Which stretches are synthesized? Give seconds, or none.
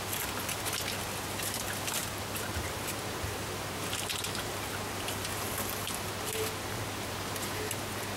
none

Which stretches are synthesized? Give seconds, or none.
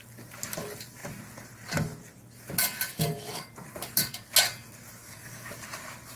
2.9-3.5 (codec, DAC); 5.0-5.5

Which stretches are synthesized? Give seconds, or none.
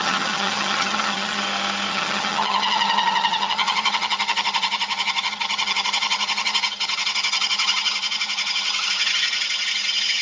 0.0-1.4 (vocoder, HiFi-GAN); 1.9-10.2